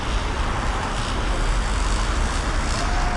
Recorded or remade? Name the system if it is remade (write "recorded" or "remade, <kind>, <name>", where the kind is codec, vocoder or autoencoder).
recorded